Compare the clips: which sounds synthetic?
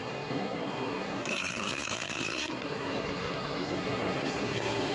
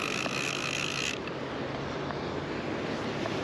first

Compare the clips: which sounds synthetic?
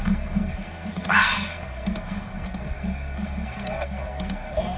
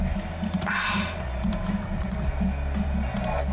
first